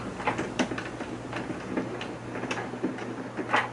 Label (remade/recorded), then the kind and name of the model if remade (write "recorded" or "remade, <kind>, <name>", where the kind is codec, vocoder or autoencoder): recorded